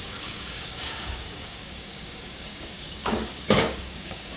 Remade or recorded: remade